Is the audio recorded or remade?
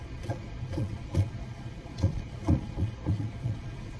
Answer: remade